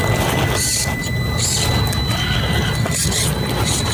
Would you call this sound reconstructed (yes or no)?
no